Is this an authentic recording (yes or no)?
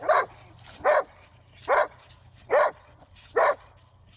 yes